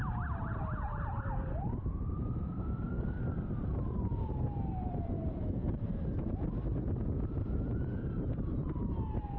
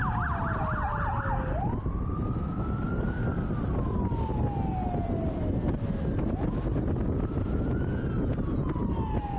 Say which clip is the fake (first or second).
first